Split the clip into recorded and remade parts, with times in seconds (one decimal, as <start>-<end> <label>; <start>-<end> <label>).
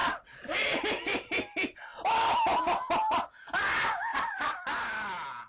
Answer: 0.0-0.8 remade; 0.8-4.1 recorded; 4.1-4.6 remade; 4.6-5.5 recorded